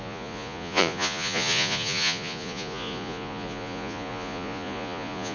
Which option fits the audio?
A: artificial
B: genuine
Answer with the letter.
A